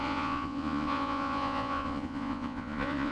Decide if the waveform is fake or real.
fake